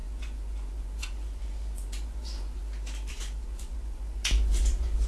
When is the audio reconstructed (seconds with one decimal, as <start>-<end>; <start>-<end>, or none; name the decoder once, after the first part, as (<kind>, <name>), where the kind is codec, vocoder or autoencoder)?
0.0-2.6 (vocoder, Vocos); 3.1-5.1